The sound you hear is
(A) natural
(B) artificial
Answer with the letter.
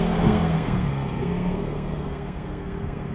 B